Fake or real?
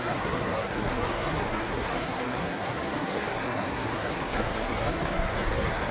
fake